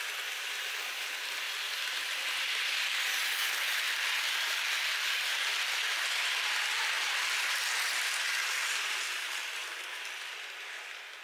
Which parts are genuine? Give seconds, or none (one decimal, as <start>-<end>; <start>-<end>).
0.0-3.2; 4.6-9.6; 10.3-11.2